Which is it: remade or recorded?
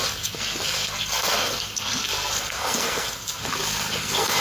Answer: remade